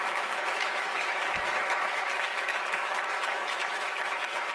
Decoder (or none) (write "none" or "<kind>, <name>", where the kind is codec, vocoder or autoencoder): autoencoder, DAC-VAE